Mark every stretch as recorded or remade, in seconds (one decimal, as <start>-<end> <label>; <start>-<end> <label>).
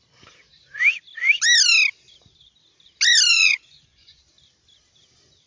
0.0-3.3 recorded; 3.3-4.1 remade; 4.1-5.5 recorded